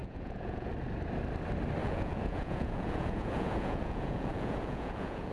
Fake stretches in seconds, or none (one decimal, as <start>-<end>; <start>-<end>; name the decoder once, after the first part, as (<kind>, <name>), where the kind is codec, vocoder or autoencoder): 0.0-0.7 (vocoder, Vocos); 1.8-5.3